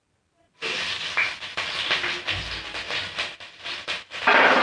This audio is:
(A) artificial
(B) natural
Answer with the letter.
B